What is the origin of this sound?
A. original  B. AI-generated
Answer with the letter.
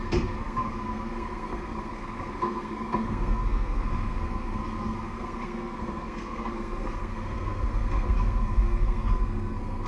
B